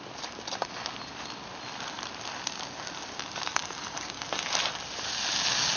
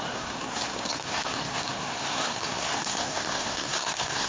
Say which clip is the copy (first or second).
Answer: second